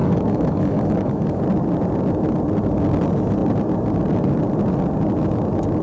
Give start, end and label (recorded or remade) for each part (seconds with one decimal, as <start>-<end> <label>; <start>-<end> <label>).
0.0-1.4 remade; 1.4-5.8 recorded